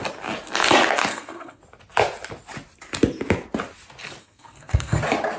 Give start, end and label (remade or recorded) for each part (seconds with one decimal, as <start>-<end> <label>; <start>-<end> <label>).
0.0-1.1 recorded; 1.1-1.6 remade; 1.6-4.2 recorded; 4.2-5.0 remade; 5.0-5.4 recorded